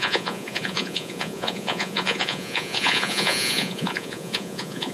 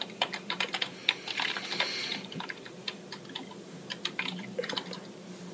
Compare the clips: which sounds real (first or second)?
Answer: second